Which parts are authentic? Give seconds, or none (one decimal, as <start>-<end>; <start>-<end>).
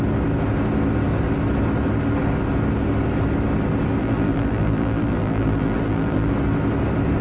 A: 0.0-4.0; 6.3-7.2